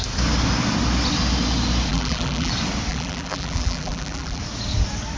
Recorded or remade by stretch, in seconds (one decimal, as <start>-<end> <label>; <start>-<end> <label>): 0.0-1.9 recorded; 1.9-2.5 remade; 2.5-2.9 recorded; 2.9-4.4 remade; 4.4-5.2 recorded